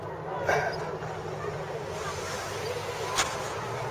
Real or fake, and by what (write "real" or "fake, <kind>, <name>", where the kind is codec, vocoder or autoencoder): real